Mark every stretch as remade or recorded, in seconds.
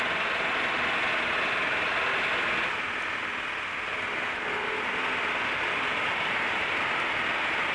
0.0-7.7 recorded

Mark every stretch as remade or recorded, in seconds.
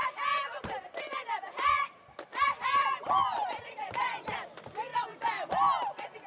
0.0-6.3 recorded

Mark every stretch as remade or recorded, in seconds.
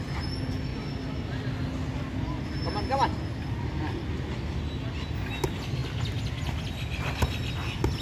0.0-8.0 recorded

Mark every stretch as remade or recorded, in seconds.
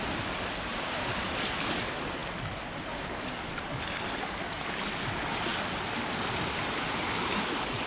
0.0-0.7 recorded; 0.7-1.2 remade; 1.2-7.9 recorded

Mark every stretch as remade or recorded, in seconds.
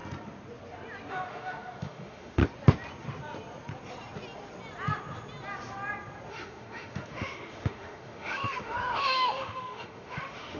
0.0-1.1 recorded; 1.1-2.4 remade; 2.4-6.3 recorded; 6.3-10.6 remade